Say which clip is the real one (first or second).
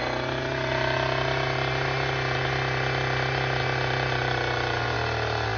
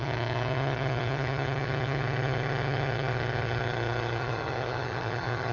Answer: first